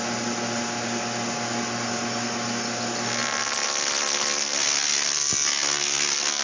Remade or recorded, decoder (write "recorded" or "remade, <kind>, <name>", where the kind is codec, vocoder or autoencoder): recorded